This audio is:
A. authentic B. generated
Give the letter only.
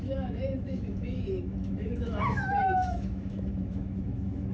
B